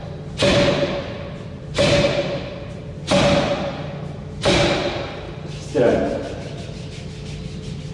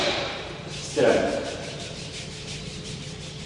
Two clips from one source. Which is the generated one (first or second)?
second